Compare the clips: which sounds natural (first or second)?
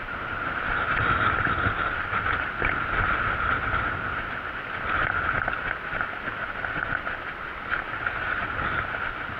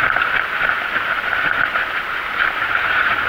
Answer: first